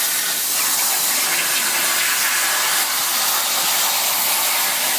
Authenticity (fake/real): real